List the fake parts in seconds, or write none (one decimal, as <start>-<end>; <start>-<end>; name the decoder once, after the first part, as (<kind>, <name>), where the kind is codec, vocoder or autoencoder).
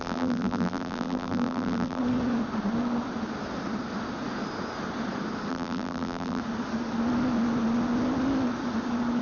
0.0-2.0 (vocoder, BigVGAN v2); 5.5-6.4